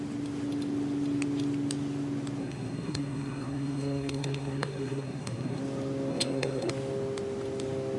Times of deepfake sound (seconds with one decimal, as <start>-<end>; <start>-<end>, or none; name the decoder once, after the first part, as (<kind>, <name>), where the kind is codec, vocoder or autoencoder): 2.4-5.6 (codec, SNAC); 6.1-6.7